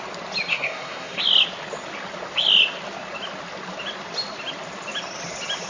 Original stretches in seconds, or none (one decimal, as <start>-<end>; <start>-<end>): 0.0-0.5; 1.2-5.7